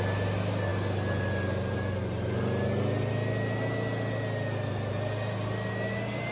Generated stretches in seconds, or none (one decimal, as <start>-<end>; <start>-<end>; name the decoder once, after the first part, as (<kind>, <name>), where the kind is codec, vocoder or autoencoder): none